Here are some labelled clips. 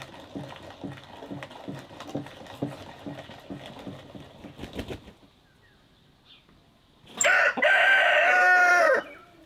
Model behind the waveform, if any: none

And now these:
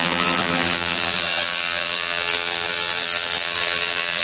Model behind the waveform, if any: vocoder, BigVGAN v2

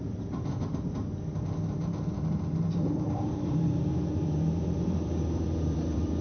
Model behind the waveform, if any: vocoder, BigVGAN v2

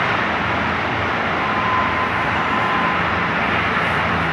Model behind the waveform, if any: vocoder, BigVGAN v2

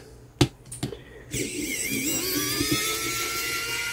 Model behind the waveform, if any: none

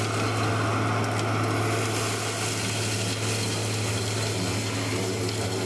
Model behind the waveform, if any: none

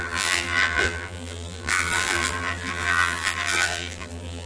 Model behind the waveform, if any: vocoder, BigVGAN v2